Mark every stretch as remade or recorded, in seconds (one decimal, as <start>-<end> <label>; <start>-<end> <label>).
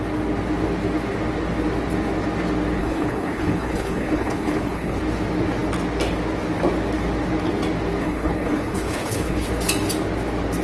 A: 0.0-2.8 recorded; 2.8-5.0 remade; 5.0-8.0 recorded; 8.0-9.5 remade; 9.5-10.6 recorded